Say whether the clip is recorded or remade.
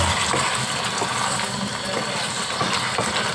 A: recorded